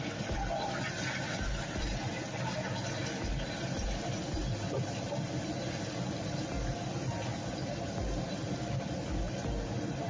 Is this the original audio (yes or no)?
yes